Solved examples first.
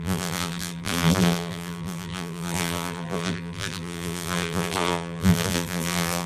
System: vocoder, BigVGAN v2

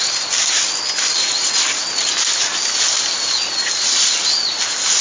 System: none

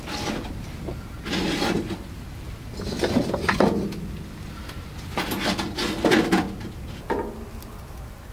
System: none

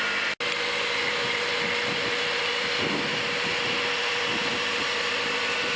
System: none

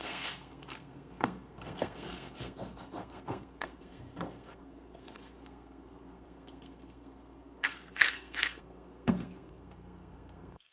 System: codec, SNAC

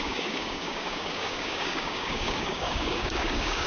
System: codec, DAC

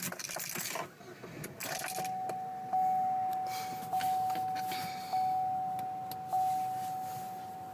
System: none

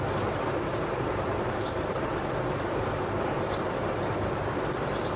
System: vocoder, BigVGAN v2